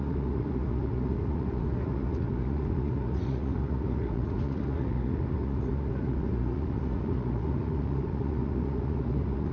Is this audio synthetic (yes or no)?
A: yes